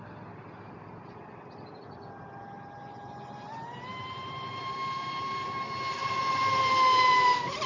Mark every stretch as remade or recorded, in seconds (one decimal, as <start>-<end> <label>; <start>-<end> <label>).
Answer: 0.0-3.9 recorded; 3.9-4.6 remade; 4.6-6.0 recorded; 6.0-6.6 remade; 6.6-7.7 recorded